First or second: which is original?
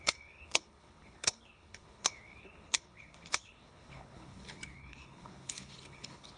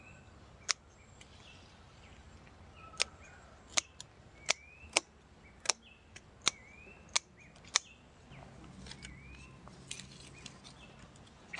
second